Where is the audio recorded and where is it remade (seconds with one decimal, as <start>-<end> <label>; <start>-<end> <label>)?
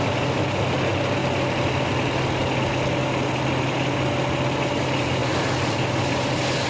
0.0-6.7 recorded